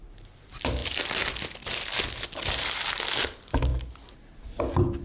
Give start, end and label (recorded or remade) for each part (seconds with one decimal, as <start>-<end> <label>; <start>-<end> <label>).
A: 0.0-5.0 recorded